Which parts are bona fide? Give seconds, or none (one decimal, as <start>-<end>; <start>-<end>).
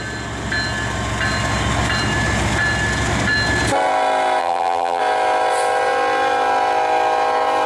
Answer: 0.0-4.4; 5.0-7.7